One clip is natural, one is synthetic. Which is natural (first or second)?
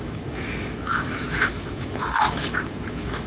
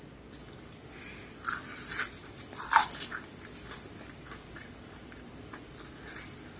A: second